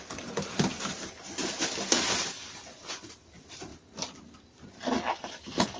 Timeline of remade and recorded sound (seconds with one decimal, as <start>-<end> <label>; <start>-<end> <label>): 0.0-3.7 remade; 3.7-5.1 recorded; 5.1-5.8 remade